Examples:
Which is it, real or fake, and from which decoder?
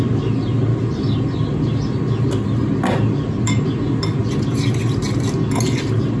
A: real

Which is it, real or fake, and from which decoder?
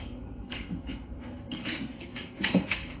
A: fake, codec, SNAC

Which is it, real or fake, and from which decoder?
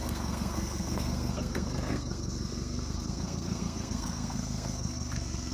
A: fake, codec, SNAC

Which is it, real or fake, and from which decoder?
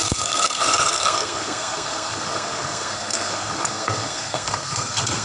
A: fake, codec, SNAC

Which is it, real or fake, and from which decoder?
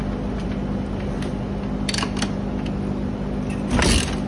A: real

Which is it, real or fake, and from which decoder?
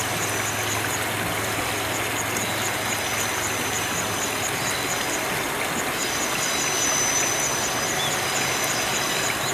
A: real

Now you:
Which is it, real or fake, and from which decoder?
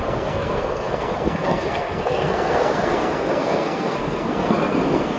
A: fake, codec, SNAC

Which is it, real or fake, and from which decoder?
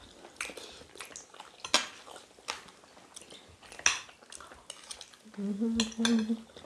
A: real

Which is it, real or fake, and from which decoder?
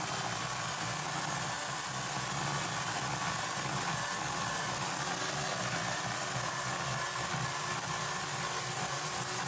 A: real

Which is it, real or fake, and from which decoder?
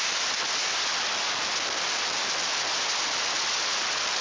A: real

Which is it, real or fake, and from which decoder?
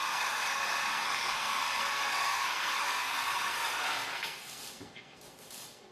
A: fake, codec, SNAC